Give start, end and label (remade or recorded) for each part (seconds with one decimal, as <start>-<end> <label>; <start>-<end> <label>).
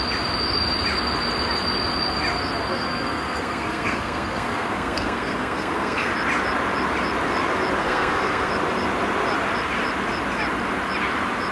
0.0-2.7 recorded; 2.7-6.1 remade; 6.1-7.8 recorded; 7.8-8.5 remade; 8.5-11.5 recorded